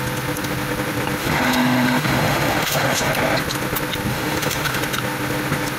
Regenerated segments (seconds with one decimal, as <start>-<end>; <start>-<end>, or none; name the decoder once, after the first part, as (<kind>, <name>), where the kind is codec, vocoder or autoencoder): 1.2-3.1 (autoencoder, DAC-VAE); 4.1-4.8